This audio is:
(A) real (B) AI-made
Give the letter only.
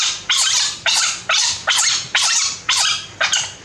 A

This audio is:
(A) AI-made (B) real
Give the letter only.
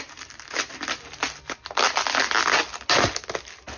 B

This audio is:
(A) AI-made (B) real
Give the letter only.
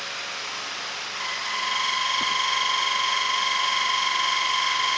B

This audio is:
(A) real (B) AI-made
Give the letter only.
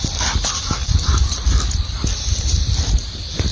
A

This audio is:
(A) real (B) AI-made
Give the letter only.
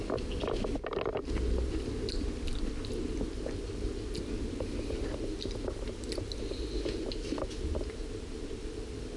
A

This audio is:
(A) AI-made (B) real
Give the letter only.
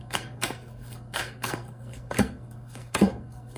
A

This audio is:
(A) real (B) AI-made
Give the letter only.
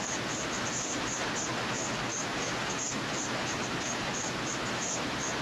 A